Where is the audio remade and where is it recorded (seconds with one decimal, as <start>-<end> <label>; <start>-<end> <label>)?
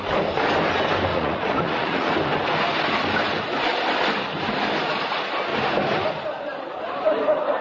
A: 0.0-1.1 recorded; 1.1-2.1 remade; 2.1-7.6 recorded